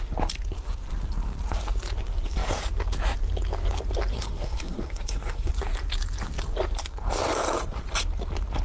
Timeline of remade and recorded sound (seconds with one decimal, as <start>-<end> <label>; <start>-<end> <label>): 0.0-4.1 recorded; 4.1-5.5 remade; 5.5-8.6 recorded